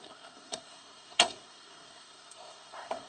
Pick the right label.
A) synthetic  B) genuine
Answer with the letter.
A